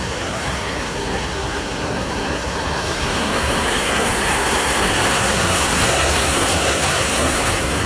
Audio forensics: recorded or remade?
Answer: remade